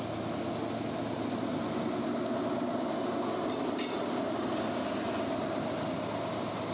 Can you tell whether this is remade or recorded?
recorded